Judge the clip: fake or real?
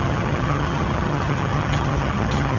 fake